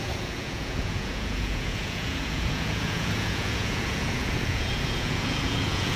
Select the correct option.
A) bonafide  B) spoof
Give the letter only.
B